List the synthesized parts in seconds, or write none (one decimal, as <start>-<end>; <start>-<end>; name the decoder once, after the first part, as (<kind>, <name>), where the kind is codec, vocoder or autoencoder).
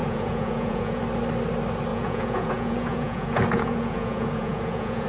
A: 0.0-1.0 (vocoder, Vocos); 1.9-5.1